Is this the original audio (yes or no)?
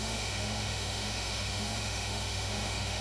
no